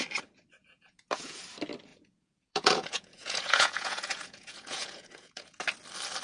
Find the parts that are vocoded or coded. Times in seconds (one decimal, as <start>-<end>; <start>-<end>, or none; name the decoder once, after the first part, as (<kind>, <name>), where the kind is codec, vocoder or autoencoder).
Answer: 0.6-1.4 (vocoder, Vocos); 1.9-5.6